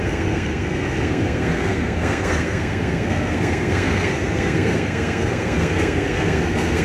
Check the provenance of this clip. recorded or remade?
remade